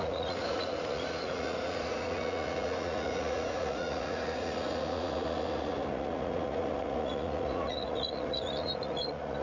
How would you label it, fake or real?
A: fake